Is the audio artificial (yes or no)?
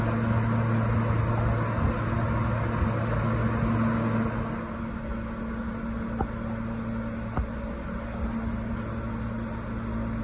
no